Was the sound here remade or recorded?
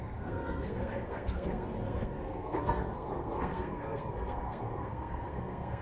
remade